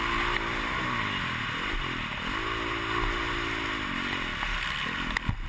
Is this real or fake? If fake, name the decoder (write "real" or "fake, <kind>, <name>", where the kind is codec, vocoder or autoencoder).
real